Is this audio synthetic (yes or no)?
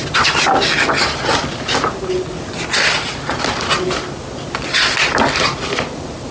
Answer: no